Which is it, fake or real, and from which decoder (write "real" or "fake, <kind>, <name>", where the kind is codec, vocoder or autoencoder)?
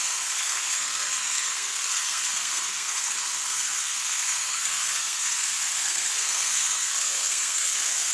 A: fake, codec, SNAC